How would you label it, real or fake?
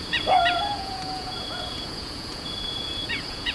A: fake